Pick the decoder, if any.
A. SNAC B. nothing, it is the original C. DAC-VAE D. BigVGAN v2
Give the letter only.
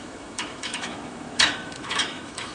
C